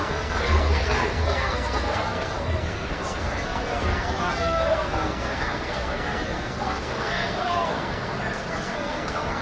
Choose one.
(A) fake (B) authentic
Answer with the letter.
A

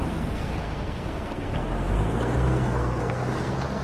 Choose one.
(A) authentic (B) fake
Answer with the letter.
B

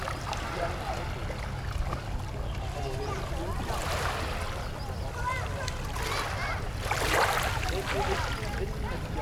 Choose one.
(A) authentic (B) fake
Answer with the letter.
A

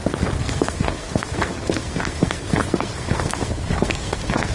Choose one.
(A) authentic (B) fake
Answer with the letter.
B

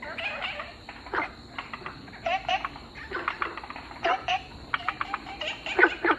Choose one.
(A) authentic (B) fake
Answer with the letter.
A